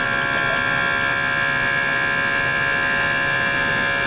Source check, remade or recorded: recorded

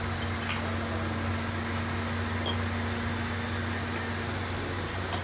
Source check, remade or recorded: recorded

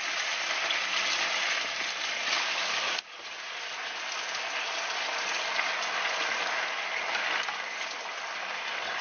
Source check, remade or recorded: recorded